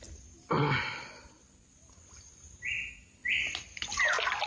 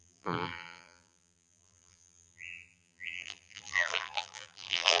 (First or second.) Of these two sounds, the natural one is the first